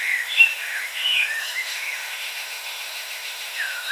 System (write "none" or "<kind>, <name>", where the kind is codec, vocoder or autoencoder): autoencoder, DAC-VAE